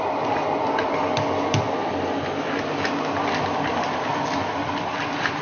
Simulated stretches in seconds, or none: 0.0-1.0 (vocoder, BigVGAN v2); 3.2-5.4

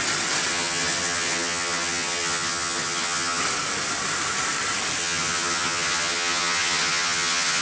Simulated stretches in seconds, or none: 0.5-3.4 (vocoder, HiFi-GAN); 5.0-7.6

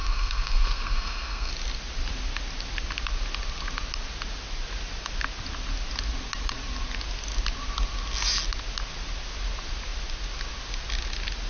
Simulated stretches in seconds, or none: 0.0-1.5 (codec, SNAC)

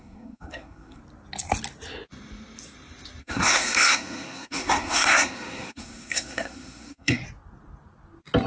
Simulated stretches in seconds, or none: 0.0-1.0 (codec, SNAC); 3.2-7.2

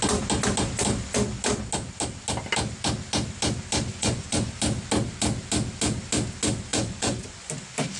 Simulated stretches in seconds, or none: 3.9-4.5 (vocoder, Vocos); 6.7-7.5